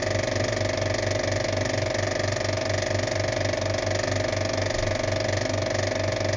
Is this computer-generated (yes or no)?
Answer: no